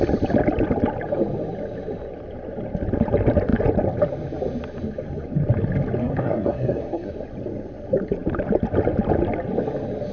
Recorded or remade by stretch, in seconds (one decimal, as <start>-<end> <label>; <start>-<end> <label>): 0.0-6.0 recorded; 6.0-7.1 remade; 7.1-10.1 recorded